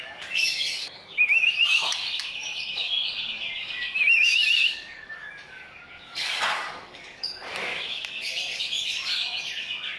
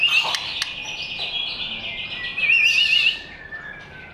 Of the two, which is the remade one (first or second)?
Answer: first